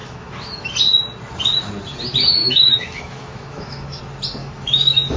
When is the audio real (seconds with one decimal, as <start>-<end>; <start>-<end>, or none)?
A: 0.7-2.4; 4.0-4.4